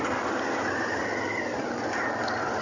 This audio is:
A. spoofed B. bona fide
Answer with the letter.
B